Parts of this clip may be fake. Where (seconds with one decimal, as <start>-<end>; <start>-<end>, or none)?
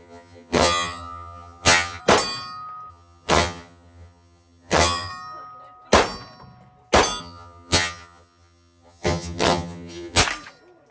0.0-2.0; 2.9-5.1; 7.2-10.2